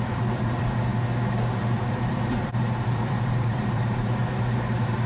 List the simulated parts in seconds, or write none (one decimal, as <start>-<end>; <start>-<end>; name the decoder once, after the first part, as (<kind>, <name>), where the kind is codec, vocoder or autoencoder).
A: 0.0-0.9 (vocoder, BigVGAN v2); 1.9-5.1